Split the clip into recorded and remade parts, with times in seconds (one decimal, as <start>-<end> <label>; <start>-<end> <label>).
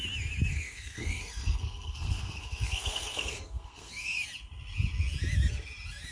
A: 0.0-0.5 recorded; 0.5-3.9 remade; 3.9-6.1 recorded